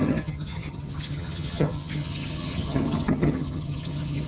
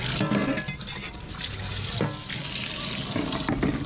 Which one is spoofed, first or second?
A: first